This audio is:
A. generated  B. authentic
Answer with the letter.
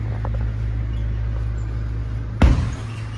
B